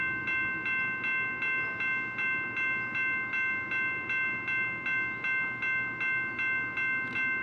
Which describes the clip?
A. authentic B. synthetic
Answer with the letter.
A